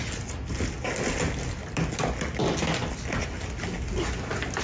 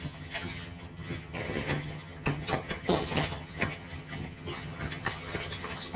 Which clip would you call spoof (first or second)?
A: second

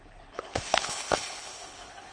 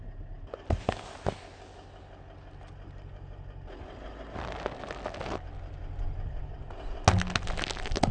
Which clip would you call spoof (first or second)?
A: first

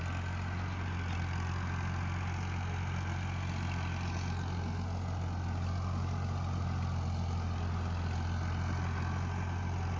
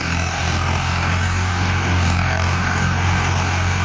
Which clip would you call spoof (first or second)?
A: second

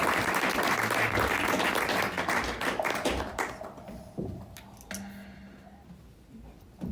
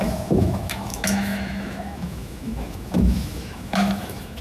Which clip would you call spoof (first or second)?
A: second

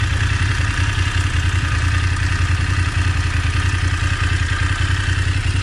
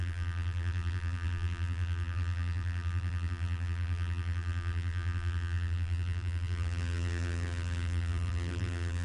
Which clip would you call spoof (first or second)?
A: second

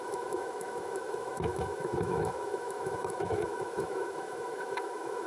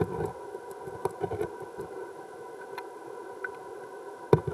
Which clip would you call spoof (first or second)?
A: first